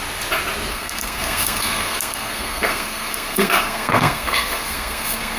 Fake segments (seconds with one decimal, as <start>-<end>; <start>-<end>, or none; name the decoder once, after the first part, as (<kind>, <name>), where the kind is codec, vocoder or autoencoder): 0.7-5.4 (codec, SNAC)